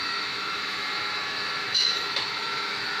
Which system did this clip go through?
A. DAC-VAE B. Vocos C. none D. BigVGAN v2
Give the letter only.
A